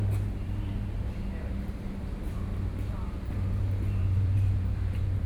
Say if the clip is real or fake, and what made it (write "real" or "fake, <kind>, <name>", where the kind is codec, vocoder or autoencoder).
fake, vocoder, BigVGAN v2